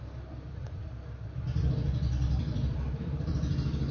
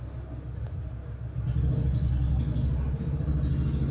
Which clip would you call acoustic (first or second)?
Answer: second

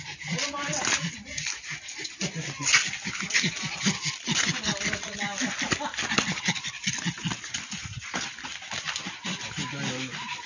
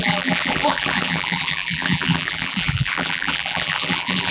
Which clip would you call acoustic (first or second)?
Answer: first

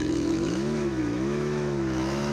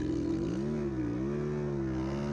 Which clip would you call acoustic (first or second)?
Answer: second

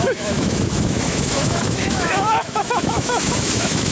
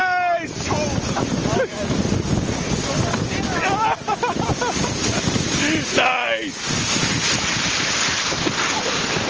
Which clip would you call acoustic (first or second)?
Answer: second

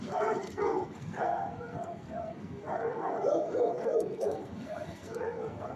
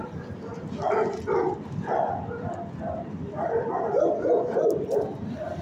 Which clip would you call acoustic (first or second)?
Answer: second